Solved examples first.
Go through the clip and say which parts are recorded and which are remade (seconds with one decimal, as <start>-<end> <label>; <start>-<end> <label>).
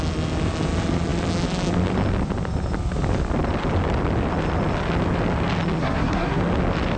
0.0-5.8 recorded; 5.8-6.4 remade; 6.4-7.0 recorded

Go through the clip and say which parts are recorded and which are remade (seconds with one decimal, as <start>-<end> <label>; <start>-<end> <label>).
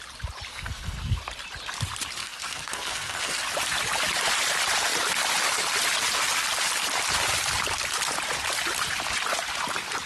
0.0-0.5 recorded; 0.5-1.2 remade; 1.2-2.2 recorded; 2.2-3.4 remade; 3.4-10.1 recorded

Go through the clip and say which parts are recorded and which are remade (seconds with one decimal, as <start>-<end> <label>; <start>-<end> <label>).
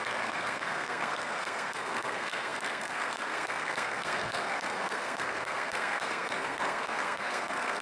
0.0-7.8 remade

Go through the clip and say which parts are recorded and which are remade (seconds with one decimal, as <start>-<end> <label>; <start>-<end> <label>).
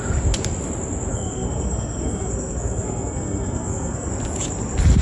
0.0-1.1 recorded; 1.1-4.1 remade; 4.1-5.0 recorded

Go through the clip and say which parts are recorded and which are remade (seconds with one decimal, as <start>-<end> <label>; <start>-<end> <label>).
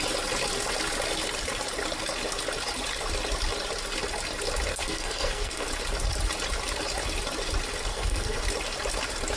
0.0-4.7 recorded; 4.7-5.7 remade; 5.7-7.9 recorded; 7.9-8.4 remade; 8.4-9.4 recorded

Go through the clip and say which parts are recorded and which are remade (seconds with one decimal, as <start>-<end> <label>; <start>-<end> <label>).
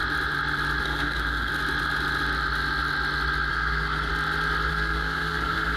0.0-0.8 recorded; 0.8-1.5 remade; 1.5-3.5 recorded; 3.5-4.1 remade; 4.1-4.7 recorded; 4.7-5.8 remade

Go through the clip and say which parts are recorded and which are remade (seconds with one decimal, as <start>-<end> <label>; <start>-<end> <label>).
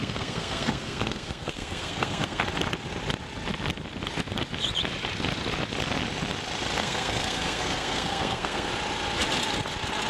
0.0-2.4 remade; 2.4-6.8 recorded; 6.8-8.7 remade; 8.7-10.1 recorded